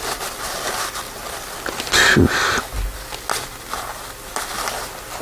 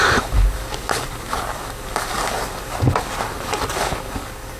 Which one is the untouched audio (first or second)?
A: first